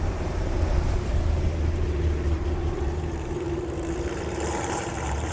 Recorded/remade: remade